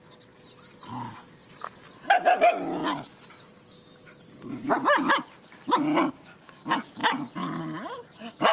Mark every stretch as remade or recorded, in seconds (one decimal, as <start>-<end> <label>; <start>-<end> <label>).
0.0-8.5 recorded